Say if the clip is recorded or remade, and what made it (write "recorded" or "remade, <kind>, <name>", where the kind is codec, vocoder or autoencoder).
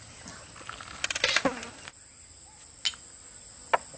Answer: recorded